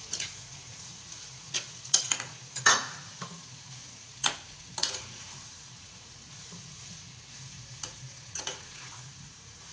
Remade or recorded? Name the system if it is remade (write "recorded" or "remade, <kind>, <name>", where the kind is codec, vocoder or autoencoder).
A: remade, vocoder, Vocos